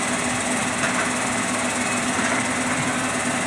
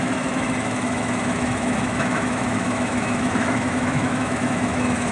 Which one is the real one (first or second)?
first